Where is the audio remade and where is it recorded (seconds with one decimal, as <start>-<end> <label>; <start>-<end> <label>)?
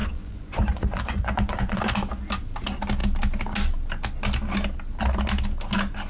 0.0-1.8 remade; 1.8-6.1 recorded